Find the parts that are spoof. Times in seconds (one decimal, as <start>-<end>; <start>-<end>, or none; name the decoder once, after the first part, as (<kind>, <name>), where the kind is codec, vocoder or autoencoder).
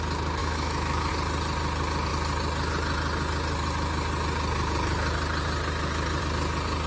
0.4-1.1 (autoencoder, DAC-VAE)